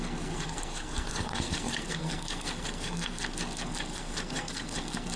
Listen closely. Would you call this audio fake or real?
fake